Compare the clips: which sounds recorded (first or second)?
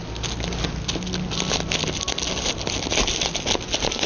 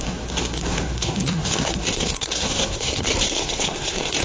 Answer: first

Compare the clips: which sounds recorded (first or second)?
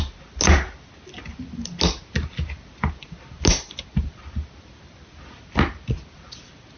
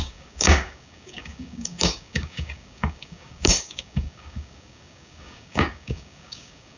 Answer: first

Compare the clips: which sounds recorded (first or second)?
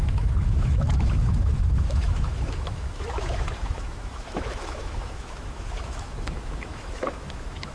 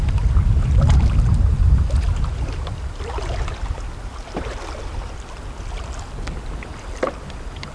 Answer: second